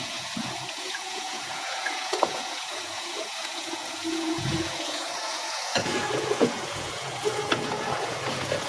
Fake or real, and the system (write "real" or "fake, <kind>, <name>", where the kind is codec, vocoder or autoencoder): fake, vocoder, Vocos